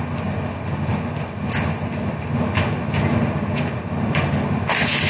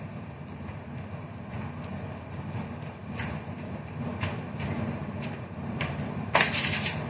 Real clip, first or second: first